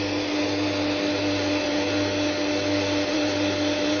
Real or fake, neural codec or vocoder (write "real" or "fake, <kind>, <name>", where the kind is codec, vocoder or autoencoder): real